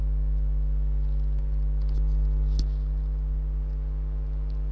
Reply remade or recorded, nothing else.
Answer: recorded